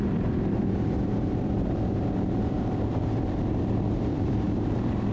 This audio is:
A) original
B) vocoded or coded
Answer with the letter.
B